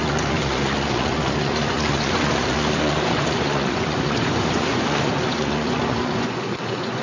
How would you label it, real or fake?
fake